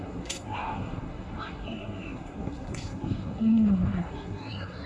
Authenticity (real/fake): fake